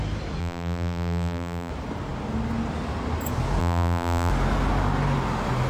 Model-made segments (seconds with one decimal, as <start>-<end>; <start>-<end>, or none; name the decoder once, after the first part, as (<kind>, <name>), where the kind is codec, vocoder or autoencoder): 0.4-1.7 (vocoder, BigVGAN v2); 3.6-4.3